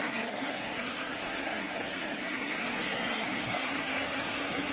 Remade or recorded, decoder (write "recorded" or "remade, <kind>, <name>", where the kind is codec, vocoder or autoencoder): remade, codec, SNAC